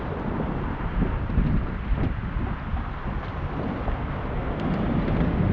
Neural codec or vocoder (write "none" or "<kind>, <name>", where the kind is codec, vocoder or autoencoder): none